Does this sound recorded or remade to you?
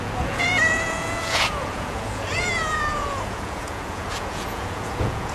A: remade